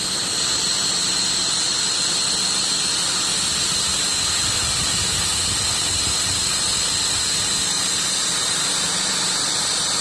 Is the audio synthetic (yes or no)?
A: no